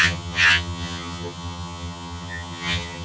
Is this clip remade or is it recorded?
remade